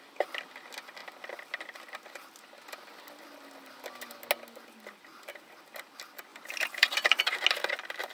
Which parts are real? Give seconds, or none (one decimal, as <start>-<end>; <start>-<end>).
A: 0.0-6.3; 7.2-8.1